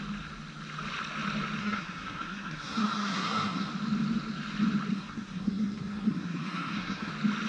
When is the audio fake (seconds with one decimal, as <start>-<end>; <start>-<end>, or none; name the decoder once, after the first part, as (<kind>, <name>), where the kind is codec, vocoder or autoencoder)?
1.6-3.7 (codec, SNAC); 4.9-7.1